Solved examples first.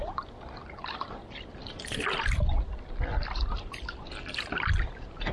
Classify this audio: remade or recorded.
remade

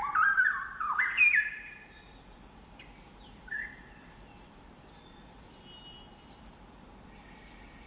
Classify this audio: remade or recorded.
remade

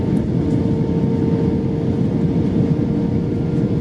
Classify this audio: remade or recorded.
recorded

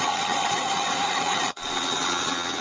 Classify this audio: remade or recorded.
remade